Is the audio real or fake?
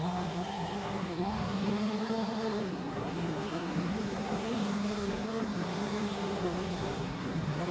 fake